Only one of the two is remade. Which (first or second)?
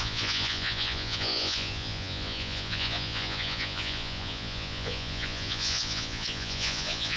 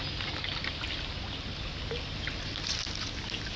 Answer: first